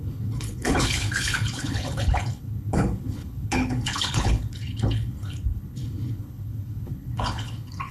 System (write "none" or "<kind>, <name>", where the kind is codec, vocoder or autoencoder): codec, HILCodec